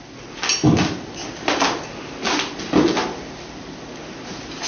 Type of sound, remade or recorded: recorded